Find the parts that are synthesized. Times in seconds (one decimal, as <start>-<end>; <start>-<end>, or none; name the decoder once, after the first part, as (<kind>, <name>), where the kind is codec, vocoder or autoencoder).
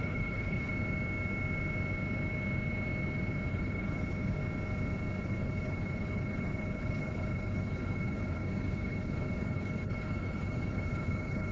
0.0-0.7 (codec, HILCodec); 3.5-4.4; 5.2-11.5